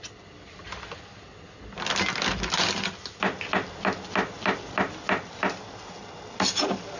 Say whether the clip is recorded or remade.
recorded